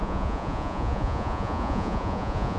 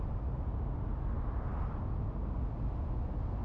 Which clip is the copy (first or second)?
first